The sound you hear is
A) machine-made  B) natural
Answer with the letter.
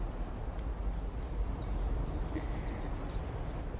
B